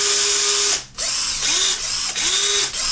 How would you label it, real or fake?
real